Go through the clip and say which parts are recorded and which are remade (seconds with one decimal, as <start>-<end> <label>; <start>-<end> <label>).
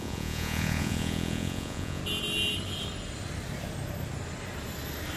0.0-2.0 remade; 2.0-5.2 recorded